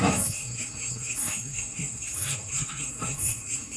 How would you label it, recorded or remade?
remade